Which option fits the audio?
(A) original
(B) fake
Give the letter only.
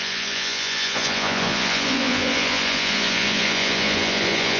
B